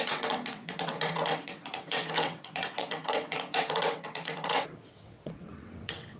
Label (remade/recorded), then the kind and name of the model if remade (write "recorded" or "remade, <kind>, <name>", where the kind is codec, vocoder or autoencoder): remade, vocoder, WaveNeXt